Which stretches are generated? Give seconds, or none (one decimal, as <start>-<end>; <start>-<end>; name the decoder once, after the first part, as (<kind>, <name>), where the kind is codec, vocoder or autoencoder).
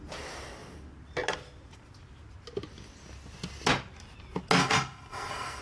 4.6-5.6 (codec, SNAC)